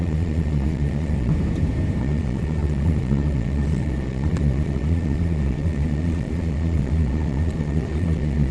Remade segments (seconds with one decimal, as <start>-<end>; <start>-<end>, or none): 0.0-1.3; 2.0-8.5